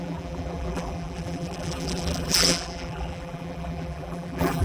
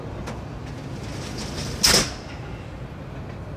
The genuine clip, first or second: second